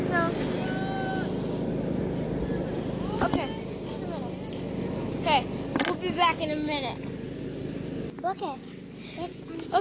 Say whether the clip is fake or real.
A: real